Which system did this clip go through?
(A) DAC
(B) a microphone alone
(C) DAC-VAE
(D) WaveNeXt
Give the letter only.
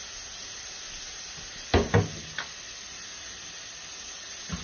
B